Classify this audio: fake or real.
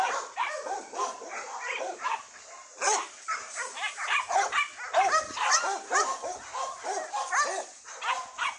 real